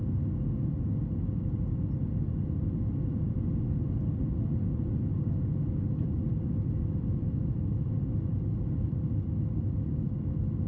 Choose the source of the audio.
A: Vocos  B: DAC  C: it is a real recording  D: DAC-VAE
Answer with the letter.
C